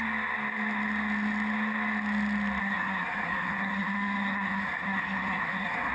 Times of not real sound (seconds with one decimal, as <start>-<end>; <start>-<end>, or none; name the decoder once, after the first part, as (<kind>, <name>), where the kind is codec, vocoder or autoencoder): 2.6-5.9 (codec, SNAC)